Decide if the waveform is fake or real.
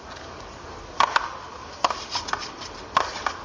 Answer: real